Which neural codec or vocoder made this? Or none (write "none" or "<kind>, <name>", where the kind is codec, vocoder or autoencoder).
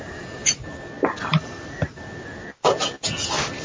none